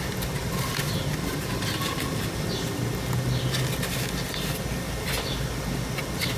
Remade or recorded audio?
recorded